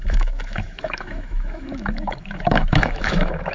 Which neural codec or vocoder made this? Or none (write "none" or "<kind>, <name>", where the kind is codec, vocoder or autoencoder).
autoencoder, DAC-VAE